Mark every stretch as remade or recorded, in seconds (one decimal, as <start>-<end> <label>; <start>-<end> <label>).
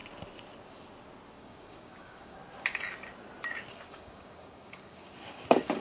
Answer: 0.0-1.4 recorded; 1.4-2.4 remade; 2.4-3.7 recorded; 3.7-5.8 remade